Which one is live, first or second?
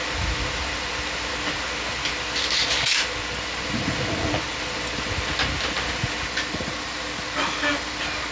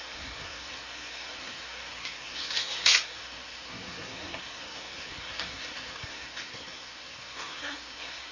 first